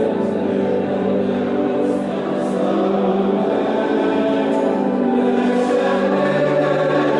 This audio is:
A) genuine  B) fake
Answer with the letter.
B